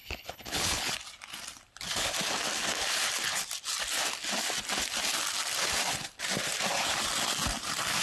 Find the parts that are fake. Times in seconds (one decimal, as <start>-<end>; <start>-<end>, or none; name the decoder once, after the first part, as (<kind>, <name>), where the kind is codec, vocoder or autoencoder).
0.0-0.9 (codec, HILCodec)